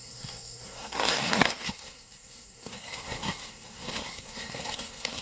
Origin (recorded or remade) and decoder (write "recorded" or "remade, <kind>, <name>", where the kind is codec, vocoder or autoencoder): remade, codec, SNAC